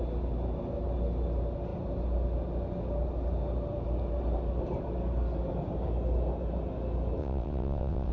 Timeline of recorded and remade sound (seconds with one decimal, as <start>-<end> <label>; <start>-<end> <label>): 0.0-7.2 recorded; 7.2-8.1 remade